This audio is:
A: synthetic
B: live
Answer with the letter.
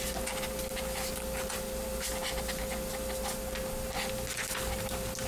B